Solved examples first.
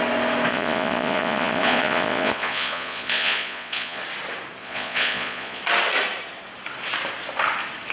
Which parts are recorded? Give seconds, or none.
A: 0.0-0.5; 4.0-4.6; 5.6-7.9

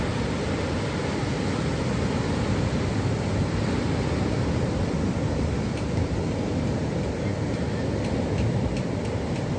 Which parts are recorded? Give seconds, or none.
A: 0.0-9.6